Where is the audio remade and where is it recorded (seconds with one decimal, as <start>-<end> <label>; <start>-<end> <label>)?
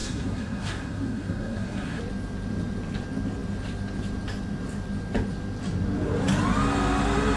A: 0.0-2.0 remade; 2.0-7.4 recorded